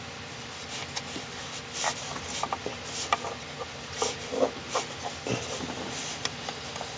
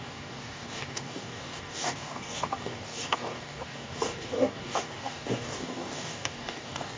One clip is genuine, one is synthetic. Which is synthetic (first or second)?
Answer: second